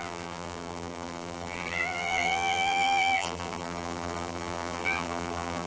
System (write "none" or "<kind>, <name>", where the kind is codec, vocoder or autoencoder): vocoder, BigVGAN v2